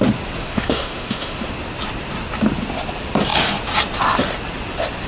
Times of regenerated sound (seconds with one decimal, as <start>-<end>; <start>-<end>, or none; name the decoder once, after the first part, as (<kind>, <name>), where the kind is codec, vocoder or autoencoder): 0.4-1.5 (autoencoder, DAC-VAE)